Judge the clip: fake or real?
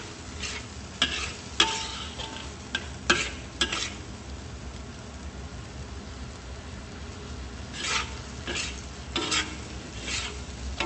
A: real